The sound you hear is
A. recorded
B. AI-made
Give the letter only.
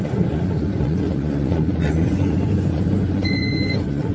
B